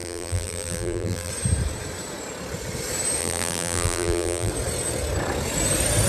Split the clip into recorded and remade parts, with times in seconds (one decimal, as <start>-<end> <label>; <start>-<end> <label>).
0.0-1.3 remade; 1.3-3.2 recorded; 3.2-4.5 remade; 4.5-6.1 recorded